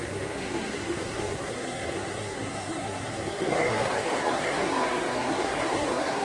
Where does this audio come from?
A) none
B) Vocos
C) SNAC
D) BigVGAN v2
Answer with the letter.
C